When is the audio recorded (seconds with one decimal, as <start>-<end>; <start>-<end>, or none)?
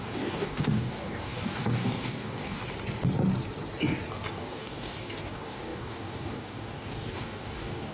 2.6-4.3